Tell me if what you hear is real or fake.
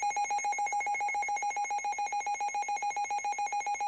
real